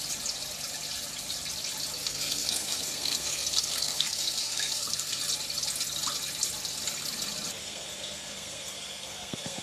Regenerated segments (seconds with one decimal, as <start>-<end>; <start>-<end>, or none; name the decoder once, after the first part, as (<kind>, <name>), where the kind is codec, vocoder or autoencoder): 2.0-5.2 (codec, SNAC); 7.6-9.6